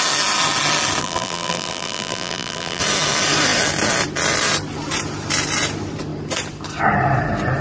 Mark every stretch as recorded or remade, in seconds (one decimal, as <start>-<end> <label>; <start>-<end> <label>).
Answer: 0.0-1.0 recorded; 1.0-2.8 remade; 2.8-7.6 recorded